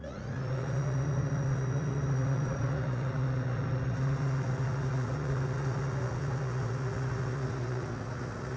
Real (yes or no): no